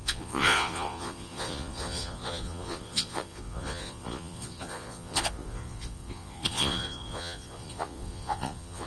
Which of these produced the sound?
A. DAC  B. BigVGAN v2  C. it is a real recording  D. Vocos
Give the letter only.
D